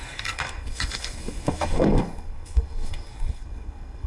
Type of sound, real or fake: fake